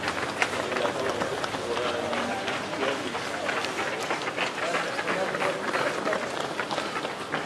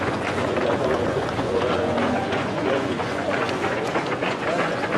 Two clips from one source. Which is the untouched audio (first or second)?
first